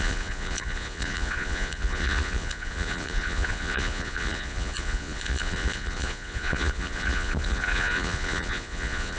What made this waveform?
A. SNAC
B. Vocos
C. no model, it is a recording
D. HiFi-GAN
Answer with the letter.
B